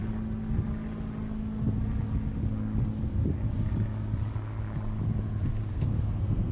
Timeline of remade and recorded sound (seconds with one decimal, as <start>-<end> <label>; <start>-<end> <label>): 0.0-5.7 recorded; 5.7-6.5 remade